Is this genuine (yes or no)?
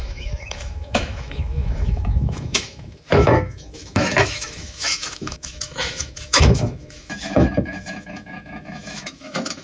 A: no